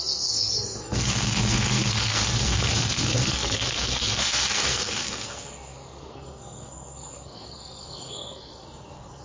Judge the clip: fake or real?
fake